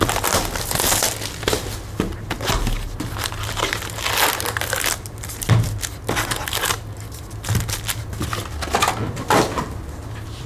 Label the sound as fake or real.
real